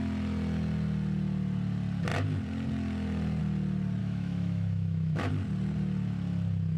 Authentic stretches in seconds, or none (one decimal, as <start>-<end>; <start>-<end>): 0.0-4.0; 5.3-6.8